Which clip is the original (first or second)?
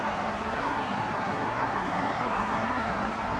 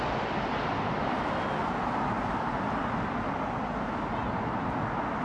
second